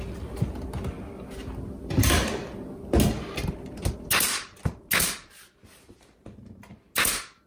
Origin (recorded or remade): recorded